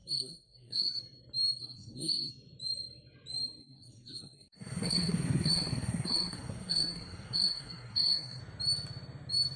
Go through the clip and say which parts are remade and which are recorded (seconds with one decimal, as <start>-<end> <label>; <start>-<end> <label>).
0.0-1.0 remade; 1.0-1.6 recorded; 1.6-2.3 remade; 2.3-3.6 recorded; 3.6-8.4 remade; 8.4-9.6 recorded